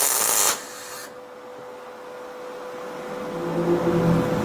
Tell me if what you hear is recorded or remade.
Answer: recorded